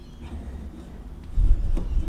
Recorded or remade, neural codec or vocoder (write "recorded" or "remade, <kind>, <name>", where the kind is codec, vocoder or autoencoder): remade, vocoder, BigVGAN v2